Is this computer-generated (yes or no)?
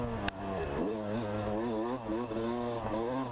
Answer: no